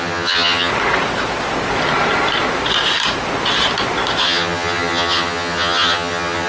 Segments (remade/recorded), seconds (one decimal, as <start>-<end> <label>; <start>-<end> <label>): 0.0-0.7 remade; 0.7-4.2 recorded; 4.2-6.5 remade